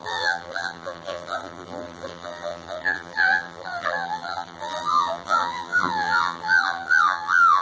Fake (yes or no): yes